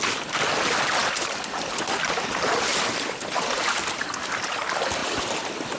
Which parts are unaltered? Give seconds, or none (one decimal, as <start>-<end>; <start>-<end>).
0.0-5.8

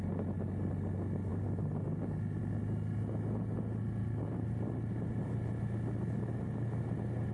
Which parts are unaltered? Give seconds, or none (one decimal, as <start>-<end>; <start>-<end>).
0.0-7.3

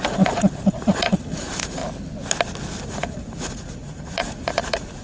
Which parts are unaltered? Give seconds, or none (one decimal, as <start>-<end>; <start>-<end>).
1.8-2.8